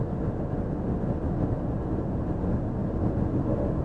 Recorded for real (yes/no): yes